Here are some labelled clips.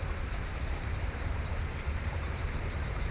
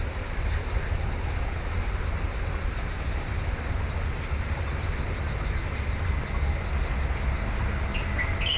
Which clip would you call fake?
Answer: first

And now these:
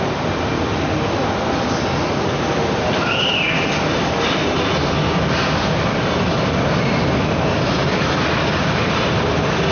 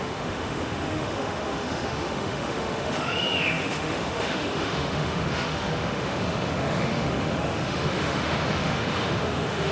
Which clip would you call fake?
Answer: second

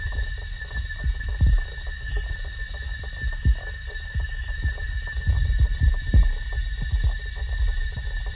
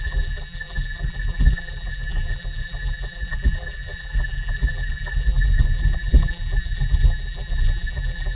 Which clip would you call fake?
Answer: second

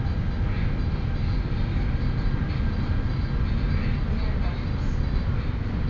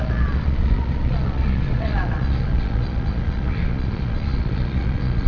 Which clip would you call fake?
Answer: second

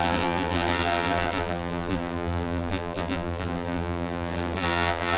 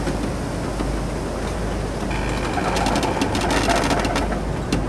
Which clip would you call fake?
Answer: first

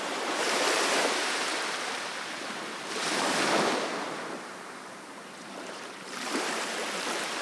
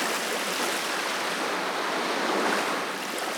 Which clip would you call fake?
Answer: first